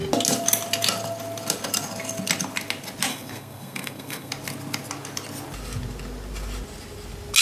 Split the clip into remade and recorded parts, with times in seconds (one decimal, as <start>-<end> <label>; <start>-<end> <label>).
0.0-3.1 recorded; 3.1-4.3 remade; 4.3-7.4 recorded